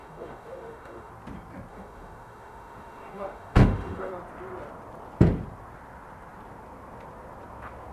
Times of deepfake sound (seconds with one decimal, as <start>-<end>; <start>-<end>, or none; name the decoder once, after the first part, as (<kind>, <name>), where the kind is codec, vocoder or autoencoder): 0.0-1.1 (autoencoder, DAC-VAE); 1.7-4.1